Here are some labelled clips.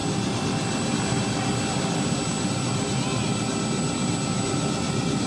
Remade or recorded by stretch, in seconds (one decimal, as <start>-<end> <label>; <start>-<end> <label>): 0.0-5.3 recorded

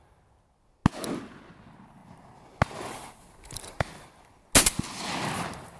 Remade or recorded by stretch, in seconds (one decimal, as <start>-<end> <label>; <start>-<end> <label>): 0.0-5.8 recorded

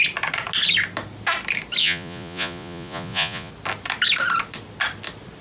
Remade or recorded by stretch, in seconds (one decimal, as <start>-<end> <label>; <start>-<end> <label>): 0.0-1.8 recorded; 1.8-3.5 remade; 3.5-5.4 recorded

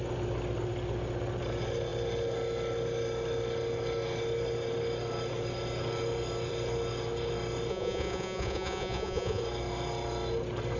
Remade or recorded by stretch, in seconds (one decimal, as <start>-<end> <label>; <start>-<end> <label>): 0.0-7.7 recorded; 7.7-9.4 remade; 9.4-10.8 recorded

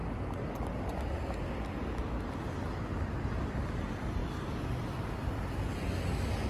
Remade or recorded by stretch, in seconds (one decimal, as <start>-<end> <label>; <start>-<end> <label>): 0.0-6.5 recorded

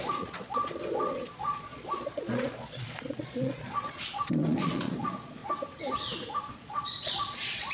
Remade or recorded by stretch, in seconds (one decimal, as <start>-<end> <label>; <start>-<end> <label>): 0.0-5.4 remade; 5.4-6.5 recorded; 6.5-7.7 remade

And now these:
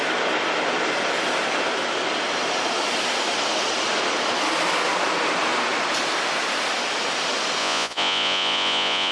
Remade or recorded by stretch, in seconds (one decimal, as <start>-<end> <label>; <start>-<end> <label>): 0.0-7.6 recorded; 7.6-9.1 remade